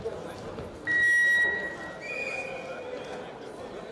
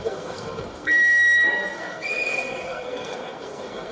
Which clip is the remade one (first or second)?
second